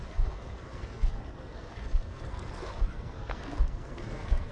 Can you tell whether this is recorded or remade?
remade